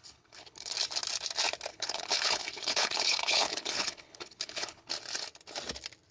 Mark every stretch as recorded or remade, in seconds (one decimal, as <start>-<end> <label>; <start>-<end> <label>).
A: 0.0-0.7 remade; 0.7-1.7 recorded; 1.7-4.9 remade; 4.9-6.1 recorded